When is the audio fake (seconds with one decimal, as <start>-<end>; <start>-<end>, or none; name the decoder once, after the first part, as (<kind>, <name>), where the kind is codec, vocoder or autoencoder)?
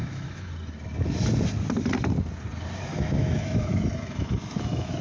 0.0-0.5 (autoencoder, DAC-VAE); 2.9-5.0